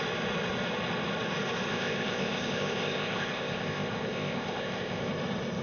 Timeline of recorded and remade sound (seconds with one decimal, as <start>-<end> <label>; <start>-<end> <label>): 0.0-1.7 recorded; 1.7-5.1 remade; 5.1-5.6 recorded